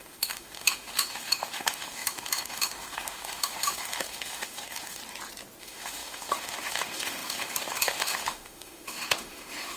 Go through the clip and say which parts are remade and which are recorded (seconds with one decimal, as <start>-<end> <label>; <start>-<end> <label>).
0.0-5.0 remade; 5.0-5.6 recorded; 5.6-9.8 remade